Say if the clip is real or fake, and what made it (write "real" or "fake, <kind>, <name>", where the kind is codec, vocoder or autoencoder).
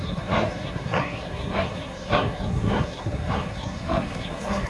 fake, codec, SNAC